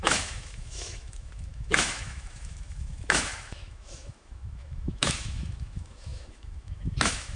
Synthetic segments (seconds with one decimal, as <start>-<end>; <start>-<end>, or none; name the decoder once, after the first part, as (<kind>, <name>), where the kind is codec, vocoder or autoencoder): 0.0-7.4 (autoencoder, DAC-VAE)